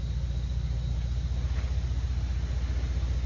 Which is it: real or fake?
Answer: real